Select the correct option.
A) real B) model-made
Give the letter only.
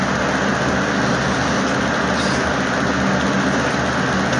A